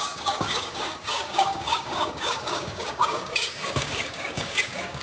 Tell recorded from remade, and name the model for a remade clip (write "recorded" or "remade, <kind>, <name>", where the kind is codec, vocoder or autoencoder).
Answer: remade, codec, DAC